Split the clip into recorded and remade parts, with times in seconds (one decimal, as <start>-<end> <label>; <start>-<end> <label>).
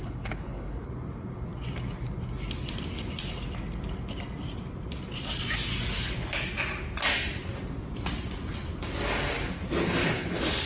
0.0-0.9 remade; 0.9-10.0 recorded; 10.0-10.7 remade